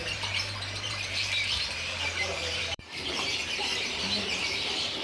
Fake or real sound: fake